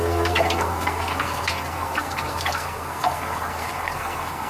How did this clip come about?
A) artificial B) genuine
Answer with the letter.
A